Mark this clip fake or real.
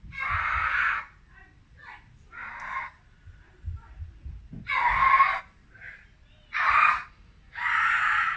real